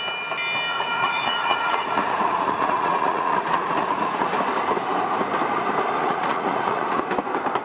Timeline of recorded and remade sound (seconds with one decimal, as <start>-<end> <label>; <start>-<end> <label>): 0.0-0.7 recorded; 0.7-4.3 remade; 4.3-6.0 recorded; 6.0-7.0 remade; 7.0-7.6 recorded